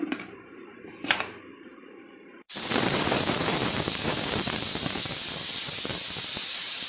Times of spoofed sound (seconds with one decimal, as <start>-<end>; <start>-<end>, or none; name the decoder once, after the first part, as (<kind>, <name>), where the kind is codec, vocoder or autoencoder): 0.0-6.9 (vocoder, BigVGAN v2)